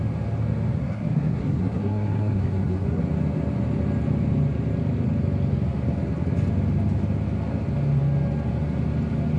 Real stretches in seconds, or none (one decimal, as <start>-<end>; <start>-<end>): 0.0-0.8; 3.0-9.4